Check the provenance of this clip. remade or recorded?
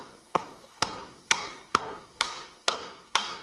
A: remade